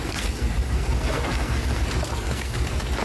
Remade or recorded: remade